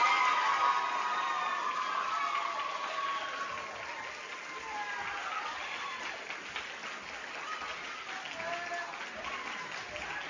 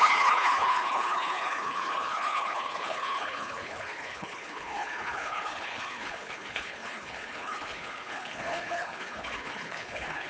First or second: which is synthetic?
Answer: second